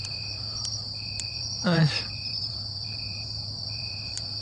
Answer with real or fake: fake